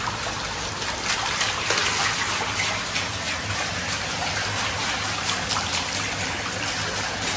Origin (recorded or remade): recorded